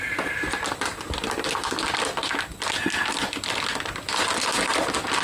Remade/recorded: recorded